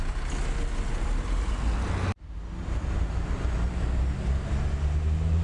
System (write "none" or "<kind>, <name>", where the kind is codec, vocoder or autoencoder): none